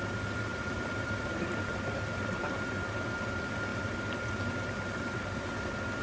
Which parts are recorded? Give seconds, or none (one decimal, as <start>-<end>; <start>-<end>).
0.0-0.5; 2.7-3.7; 5.2-6.0